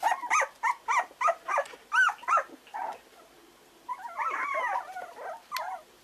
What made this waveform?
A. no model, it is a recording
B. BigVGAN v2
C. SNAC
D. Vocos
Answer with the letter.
A